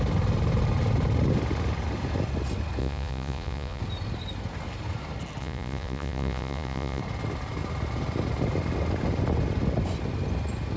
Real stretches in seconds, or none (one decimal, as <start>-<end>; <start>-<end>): 0.0-2.8; 3.8-5.4; 7.0-10.8